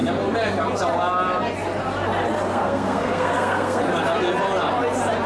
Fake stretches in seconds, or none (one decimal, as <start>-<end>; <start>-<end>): 2.5-3.8